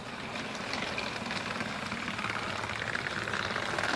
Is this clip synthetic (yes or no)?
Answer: no